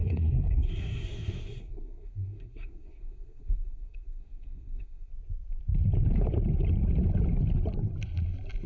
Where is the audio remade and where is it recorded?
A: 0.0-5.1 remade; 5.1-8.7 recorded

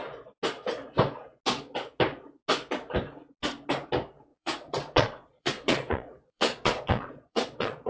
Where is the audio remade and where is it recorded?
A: 0.0-4.3 recorded; 4.3-7.9 remade

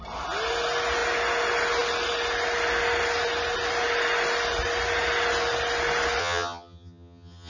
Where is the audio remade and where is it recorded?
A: 0.0-6.2 recorded; 6.2-7.5 remade